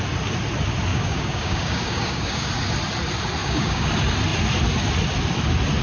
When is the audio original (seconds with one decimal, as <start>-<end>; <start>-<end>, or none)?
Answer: 0.0-0.9; 2.5-3.4; 3.9-5.8